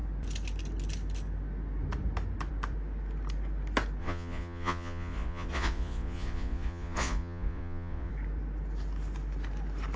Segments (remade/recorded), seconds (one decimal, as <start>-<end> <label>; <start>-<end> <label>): 0.0-4.0 recorded; 4.0-8.1 remade; 8.1-10.0 recorded